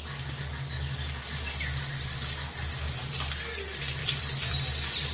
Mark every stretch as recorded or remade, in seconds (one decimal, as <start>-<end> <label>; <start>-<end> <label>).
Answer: 0.0-4.0 recorded; 4.0-4.6 remade; 4.6-5.1 recorded